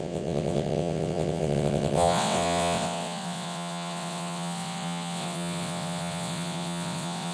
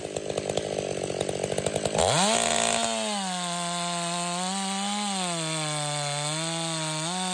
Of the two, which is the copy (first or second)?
first